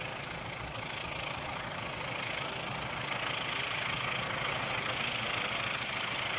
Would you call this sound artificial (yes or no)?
no